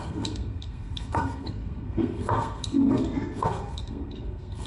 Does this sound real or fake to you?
fake